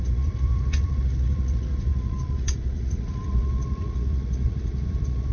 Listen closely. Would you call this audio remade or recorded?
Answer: remade